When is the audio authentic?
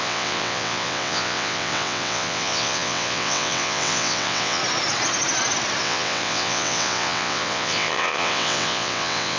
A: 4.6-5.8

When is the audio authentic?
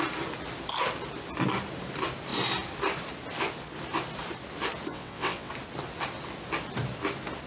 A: 0.0-4.9; 5.5-7.5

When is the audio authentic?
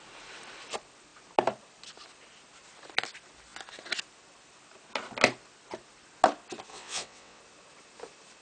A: 0.0-6.7; 7.4-8.4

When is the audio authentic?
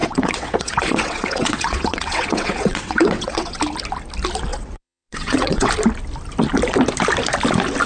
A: 3.6-4.5; 5.7-7.9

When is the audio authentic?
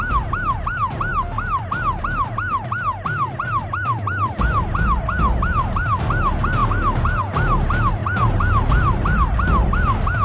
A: 0.0-10.2